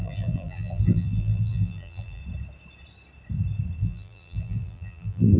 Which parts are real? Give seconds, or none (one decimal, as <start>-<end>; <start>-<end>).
2.2-3.8